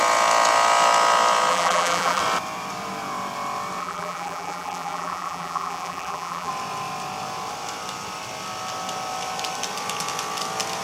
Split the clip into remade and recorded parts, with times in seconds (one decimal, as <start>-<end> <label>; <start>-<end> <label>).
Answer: 0.0-1.5 recorded; 1.5-2.2 remade; 2.2-3.8 recorded; 3.8-6.5 remade; 6.5-10.8 recorded